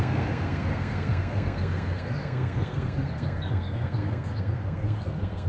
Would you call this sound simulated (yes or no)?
yes